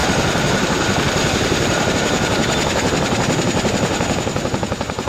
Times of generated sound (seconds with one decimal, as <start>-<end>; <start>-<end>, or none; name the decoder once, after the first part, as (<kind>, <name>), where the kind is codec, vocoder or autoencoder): 0.0-1.9 (vocoder, BigVGAN v2)